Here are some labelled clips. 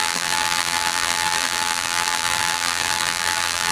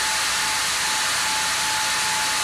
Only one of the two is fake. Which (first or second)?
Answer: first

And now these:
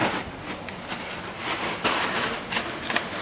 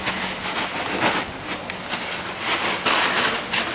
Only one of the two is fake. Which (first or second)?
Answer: first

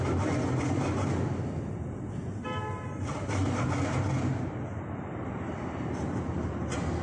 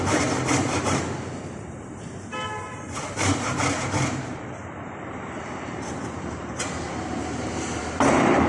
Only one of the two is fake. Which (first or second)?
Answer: second